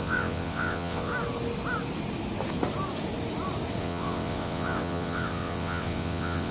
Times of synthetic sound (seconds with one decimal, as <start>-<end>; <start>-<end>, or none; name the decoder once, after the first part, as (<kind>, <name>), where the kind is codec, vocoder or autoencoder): 0.0-1.1 (vocoder, WaveNeXt); 3.8-6.5